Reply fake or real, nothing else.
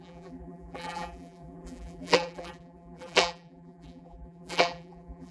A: fake